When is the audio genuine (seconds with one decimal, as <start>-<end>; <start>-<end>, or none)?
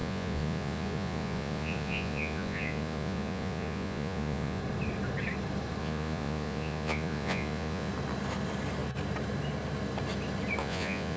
4.6-5.8; 7.9-10.6